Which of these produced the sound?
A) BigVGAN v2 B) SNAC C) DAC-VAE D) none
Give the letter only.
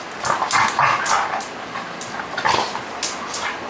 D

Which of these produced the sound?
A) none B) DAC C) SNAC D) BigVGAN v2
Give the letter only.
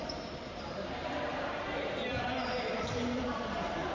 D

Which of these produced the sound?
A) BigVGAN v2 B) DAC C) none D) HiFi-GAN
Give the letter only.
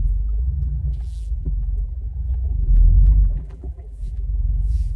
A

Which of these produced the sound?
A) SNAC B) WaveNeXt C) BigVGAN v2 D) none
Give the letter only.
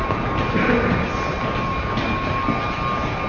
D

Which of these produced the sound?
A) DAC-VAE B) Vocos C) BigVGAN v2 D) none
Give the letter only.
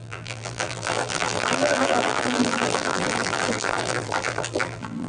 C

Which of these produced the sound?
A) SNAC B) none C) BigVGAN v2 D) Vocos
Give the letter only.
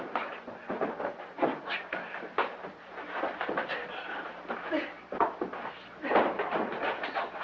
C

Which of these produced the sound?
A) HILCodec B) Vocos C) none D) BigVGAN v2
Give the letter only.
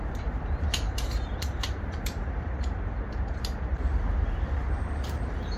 D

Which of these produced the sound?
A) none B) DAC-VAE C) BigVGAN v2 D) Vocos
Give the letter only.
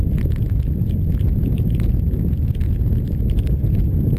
A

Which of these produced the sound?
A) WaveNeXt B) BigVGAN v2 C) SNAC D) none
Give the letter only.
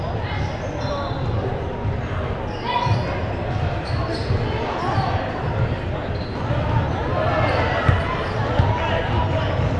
D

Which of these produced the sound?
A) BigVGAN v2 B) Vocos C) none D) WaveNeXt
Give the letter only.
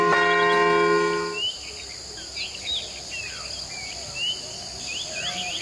C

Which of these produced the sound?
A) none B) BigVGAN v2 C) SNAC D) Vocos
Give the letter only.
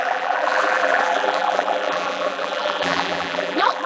B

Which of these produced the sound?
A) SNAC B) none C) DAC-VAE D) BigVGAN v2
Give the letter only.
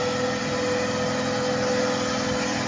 B